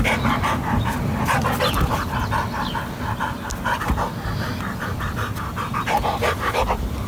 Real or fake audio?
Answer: real